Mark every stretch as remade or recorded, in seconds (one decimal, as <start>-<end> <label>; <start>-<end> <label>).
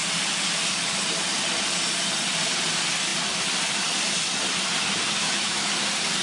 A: 0.0-5.2 recorded; 5.2-5.7 remade; 5.7-6.2 recorded